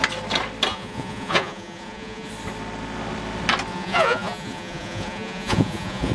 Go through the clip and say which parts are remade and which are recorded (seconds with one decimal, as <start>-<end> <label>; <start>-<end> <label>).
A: 0.0-0.7 recorded; 0.7-2.3 remade; 2.3-3.7 recorded; 3.7-6.1 remade